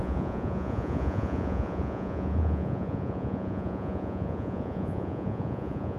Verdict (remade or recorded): remade